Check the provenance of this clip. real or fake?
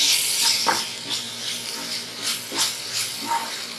real